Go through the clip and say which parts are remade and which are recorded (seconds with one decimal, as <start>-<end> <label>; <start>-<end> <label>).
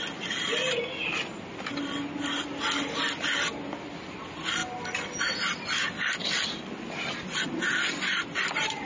0.0-8.9 recorded